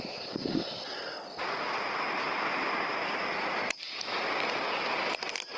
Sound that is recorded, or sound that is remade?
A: recorded